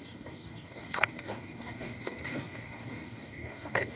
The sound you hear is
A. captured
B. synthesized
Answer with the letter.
B